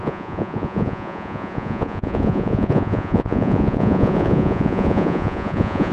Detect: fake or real fake